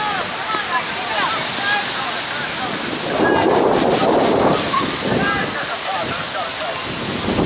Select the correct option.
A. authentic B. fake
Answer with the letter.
A